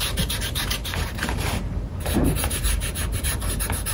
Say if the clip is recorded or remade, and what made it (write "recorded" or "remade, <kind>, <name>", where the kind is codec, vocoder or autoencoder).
remade, vocoder, BigVGAN v2